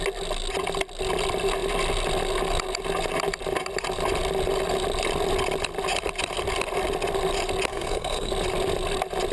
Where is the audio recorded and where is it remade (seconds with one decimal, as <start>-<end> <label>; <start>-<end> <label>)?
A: 0.0-7.7 recorded; 7.7-8.3 remade; 8.3-9.3 recorded